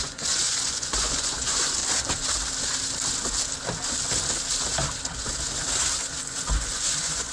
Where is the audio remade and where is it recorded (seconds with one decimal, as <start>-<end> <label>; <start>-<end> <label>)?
0.0-1.8 remade; 1.8-6.2 recorded; 6.2-7.3 remade